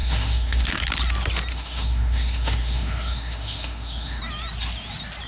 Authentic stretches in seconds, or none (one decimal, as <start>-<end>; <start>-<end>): 0.8-1.5; 4.2-5.3